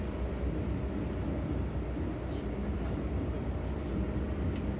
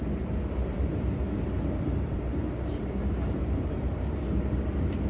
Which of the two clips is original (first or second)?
first